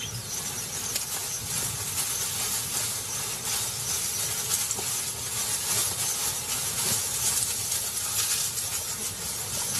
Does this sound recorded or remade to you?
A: recorded